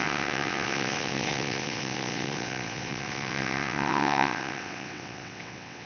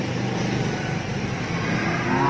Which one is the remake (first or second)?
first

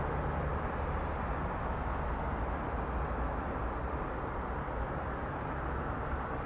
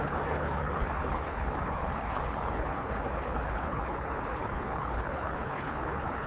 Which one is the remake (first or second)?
second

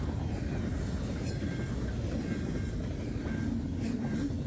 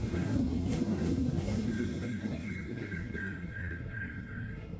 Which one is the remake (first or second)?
second